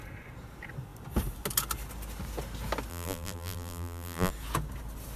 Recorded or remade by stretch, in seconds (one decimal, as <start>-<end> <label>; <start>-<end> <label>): 0.0-2.9 recorded; 2.9-4.3 remade; 4.3-5.2 recorded